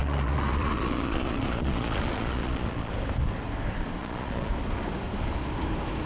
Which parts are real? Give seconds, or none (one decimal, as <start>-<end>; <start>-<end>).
2.9-4.0; 4.5-6.1